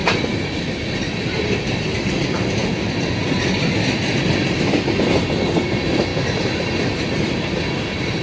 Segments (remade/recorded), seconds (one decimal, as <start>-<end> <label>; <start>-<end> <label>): 0.0-6.1 remade; 6.1-6.8 recorded; 6.8-8.2 remade